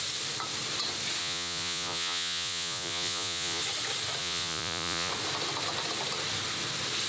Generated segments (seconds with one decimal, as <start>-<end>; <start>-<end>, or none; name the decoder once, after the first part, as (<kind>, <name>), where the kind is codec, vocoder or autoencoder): 1.2-3.6 (vocoder, Vocos); 4.2-5.1